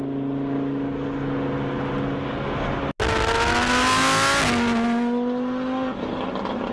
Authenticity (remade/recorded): recorded